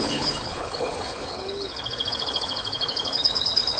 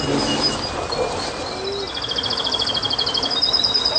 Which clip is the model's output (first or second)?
first